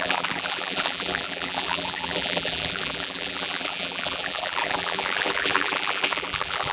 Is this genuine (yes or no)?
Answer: no